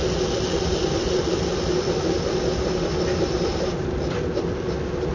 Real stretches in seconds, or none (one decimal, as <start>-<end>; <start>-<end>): 0.0-5.1